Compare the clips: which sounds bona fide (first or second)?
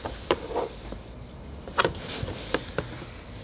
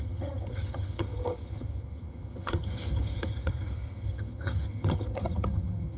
first